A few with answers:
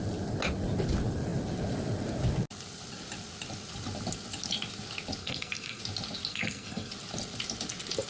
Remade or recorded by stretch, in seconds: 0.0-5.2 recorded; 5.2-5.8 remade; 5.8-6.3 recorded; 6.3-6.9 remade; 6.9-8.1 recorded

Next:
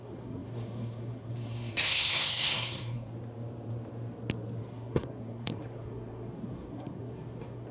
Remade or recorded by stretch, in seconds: 0.0-3.1 remade; 3.1-4.6 recorded; 4.6-7.7 remade

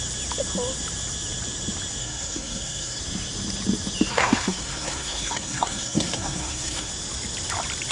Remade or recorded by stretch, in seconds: 0.0-2.0 recorded; 2.0-3.0 remade; 3.0-4.1 recorded; 4.1-6.9 remade; 6.9-7.9 recorded